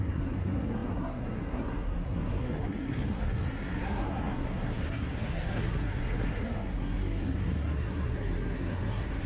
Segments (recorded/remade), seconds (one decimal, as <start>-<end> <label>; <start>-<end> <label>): 0.0-9.3 remade